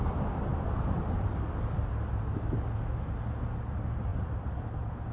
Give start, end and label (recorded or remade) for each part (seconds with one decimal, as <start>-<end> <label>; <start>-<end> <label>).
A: 0.0-0.5 recorded; 0.5-1.1 remade; 1.1-1.8 recorded; 1.8-2.5 remade; 2.5-4.1 recorded; 4.1-5.1 remade

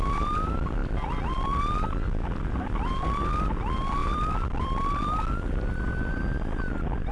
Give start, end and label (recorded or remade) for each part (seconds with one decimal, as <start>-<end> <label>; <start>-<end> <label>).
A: 0.0-0.8 recorded; 0.8-1.6 remade; 1.6-4.0 recorded; 4.0-6.2 remade; 6.2-7.1 recorded

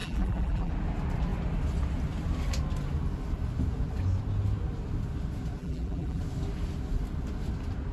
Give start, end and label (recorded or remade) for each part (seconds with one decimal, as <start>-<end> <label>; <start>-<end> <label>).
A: 0.0-0.7 remade; 0.7-5.6 recorded; 5.6-6.2 remade; 6.2-7.9 recorded

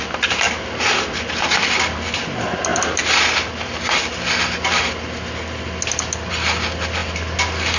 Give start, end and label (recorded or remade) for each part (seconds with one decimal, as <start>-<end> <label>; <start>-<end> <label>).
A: 0.0-7.8 recorded